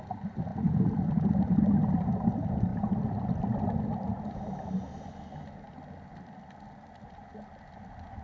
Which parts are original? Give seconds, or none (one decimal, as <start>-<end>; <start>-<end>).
0.0-8.2